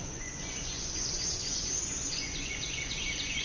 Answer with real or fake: fake